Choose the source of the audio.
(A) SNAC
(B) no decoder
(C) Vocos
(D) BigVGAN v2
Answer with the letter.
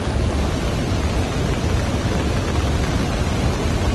B